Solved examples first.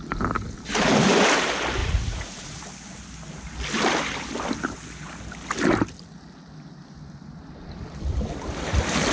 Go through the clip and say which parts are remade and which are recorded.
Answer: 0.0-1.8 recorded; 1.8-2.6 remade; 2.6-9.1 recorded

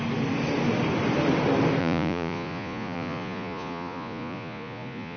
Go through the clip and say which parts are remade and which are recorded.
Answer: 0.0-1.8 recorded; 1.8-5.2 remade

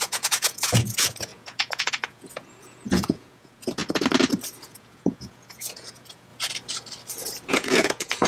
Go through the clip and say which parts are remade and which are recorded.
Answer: 0.0-3.8 remade; 3.8-4.6 recorded; 4.6-6.3 remade; 6.3-7.5 recorded; 7.5-8.3 remade